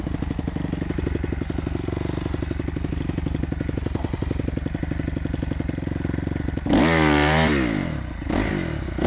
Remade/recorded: recorded